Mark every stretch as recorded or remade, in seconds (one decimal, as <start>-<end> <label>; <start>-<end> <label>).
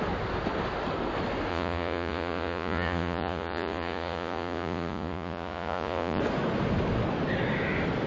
0.0-1.5 recorded; 1.5-6.2 remade; 6.2-8.1 recorded